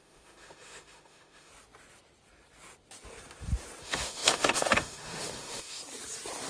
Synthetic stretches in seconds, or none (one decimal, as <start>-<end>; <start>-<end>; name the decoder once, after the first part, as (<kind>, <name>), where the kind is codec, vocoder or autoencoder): 0.0-1.5 (autoencoder, DAC-VAE); 3.8-5.8